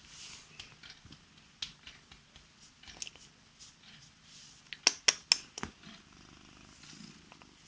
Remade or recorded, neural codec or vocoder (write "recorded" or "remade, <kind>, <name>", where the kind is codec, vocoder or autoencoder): recorded